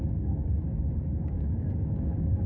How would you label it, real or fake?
fake